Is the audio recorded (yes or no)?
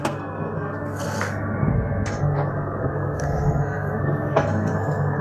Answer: no